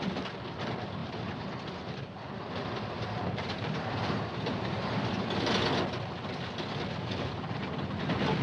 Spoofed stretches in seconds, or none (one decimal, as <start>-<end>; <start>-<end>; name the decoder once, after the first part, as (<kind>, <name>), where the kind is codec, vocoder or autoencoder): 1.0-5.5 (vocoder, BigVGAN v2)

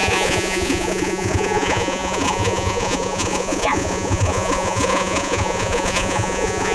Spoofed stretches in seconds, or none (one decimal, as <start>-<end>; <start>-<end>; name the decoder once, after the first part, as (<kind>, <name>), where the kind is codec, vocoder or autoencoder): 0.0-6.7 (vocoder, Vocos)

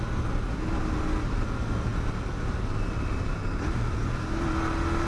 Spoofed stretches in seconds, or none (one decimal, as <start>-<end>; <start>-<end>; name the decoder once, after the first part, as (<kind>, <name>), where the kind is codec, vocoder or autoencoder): none